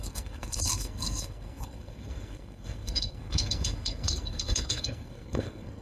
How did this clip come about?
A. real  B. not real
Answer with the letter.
B